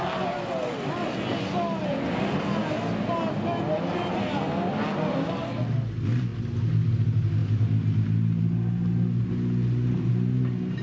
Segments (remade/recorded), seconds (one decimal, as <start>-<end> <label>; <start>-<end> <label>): 0.0-10.8 recorded